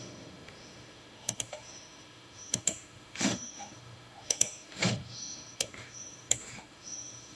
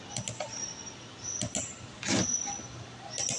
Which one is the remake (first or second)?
first